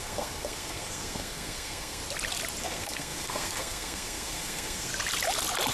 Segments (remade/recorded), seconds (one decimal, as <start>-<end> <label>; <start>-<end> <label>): 0.0-2.0 remade; 2.0-2.6 recorded; 2.6-4.9 remade; 4.9-5.7 recorded